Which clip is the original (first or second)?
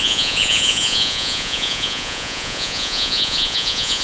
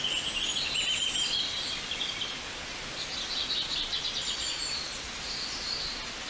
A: second